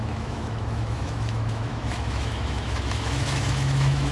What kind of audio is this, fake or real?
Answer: fake